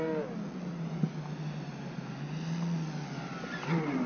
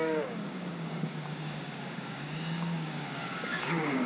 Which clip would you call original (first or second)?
first